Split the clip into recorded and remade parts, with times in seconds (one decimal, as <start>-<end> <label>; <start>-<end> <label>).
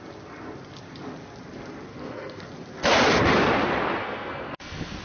0.0-1.9 recorded; 1.9-2.5 remade; 2.5-4.0 recorded; 4.0-5.0 remade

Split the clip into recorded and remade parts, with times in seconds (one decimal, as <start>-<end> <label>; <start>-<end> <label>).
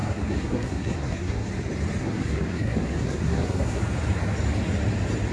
0.0-1.5 remade; 1.5-2.0 recorded; 2.0-3.8 remade; 3.8-5.3 recorded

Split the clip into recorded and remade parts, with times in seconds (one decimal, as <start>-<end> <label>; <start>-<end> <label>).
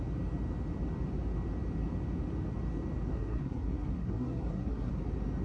0.0-3.1 recorded; 3.1-4.9 remade; 4.9-5.4 recorded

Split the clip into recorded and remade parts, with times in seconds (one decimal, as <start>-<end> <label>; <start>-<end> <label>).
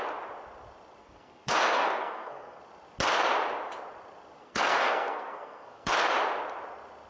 0.0-1.0 recorded; 1.0-2.6 remade; 2.6-4.4 recorded; 4.4-5.9 remade; 5.9-7.1 recorded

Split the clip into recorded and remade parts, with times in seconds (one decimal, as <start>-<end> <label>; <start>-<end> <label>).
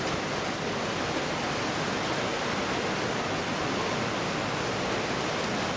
0.0-5.8 recorded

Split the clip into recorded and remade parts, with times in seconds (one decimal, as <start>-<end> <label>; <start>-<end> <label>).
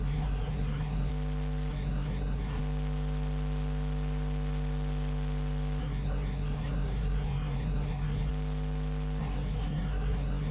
0.0-1.1 remade; 1.1-1.7 recorded; 1.7-2.6 remade; 2.6-5.8 recorded; 5.8-8.3 remade; 8.3-9.2 recorded; 9.2-10.5 remade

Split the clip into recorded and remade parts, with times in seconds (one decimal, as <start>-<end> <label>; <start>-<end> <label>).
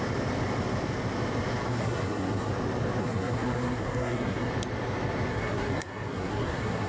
0.0-1.7 recorded; 1.7-2.5 remade; 2.5-3.0 recorded; 3.0-4.5 remade; 4.5-5.3 recorded; 5.3-6.9 remade